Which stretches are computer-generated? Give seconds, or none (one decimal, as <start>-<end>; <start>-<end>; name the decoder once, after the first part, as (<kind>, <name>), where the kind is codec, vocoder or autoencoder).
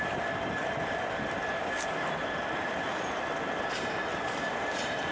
0.0-5.1 (vocoder, BigVGAN v2)